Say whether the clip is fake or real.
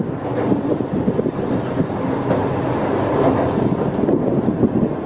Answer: real